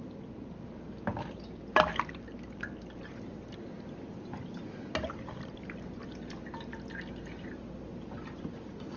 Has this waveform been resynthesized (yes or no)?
no